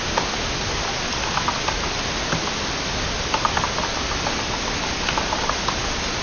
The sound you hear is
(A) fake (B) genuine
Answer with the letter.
B